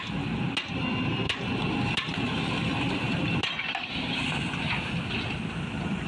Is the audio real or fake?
real